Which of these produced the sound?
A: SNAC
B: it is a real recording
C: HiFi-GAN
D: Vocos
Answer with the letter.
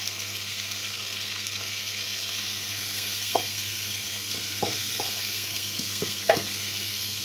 A